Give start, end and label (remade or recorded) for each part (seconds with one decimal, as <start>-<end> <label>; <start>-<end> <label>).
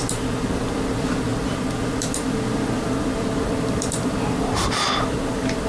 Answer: 0.0-5.7 remade